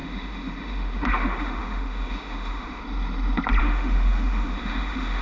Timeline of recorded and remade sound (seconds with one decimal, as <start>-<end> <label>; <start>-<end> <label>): 0.0-2.8 remade; 2.8-3.6 recorded; 3.6-5.2 remade